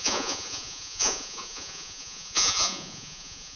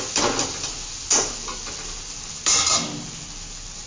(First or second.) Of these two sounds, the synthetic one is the first